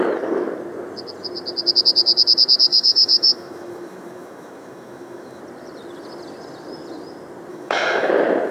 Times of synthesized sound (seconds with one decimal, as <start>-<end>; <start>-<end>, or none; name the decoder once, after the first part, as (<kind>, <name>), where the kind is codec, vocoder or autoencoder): 2.7-5.4 (autoencoder, DAC-VAE); 7.5-8.1